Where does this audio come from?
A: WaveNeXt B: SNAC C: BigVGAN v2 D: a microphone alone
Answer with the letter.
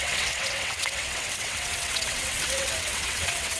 A